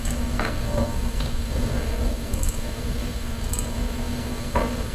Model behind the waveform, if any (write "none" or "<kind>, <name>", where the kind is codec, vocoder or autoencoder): codec, SNAC